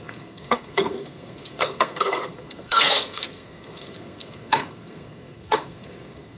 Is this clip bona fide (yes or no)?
no